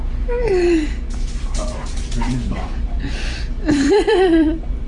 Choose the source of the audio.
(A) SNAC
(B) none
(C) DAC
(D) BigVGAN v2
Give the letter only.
D